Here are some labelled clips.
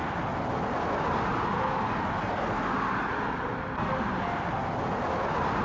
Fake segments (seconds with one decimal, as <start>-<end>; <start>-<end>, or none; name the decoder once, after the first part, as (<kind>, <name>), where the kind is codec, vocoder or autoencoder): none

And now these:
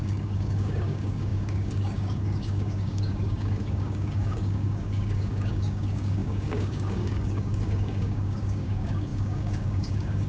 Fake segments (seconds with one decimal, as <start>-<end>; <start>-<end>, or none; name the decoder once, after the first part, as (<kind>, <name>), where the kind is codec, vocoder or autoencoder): 0.0-10.3 (codec, DAC)

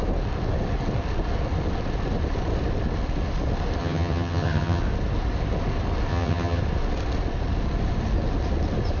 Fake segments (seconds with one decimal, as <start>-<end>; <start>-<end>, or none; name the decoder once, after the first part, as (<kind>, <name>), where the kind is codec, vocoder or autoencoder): 3.8-4.8 (vocoder, HiFi-GAN); 6.1-6.6

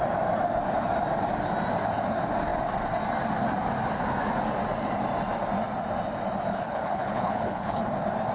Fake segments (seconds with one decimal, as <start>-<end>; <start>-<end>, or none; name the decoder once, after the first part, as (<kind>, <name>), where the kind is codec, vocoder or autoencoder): 6.5-7.8 (codec, HILCodec)

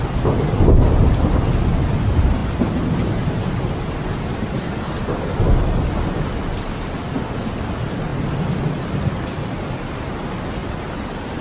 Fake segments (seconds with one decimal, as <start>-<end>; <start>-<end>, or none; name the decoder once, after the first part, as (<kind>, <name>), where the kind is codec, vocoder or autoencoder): 10.6-11.4 (vocoder, BigVGAN v2)